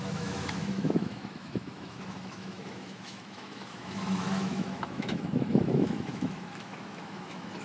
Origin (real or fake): fake